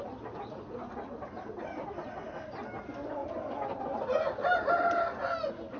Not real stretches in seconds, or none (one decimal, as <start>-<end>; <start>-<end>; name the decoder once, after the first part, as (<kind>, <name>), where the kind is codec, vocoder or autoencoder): none